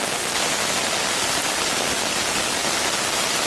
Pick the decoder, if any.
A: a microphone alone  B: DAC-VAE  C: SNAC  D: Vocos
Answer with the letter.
A